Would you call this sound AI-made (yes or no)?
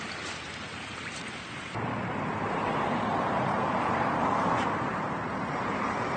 yes